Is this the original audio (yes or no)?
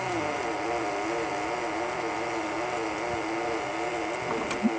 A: yes